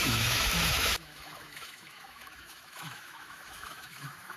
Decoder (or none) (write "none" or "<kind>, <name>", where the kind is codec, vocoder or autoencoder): autoencoder, DAC-VAE